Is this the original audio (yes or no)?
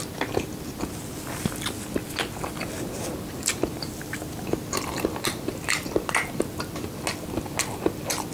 yes